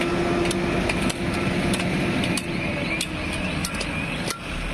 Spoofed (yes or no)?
no